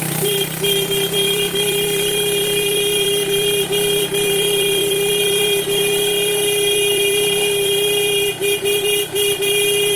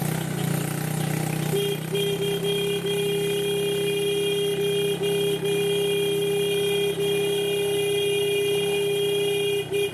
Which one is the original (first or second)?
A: second